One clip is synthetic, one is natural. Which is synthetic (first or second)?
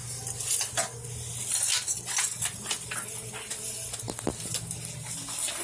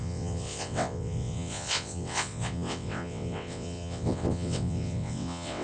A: second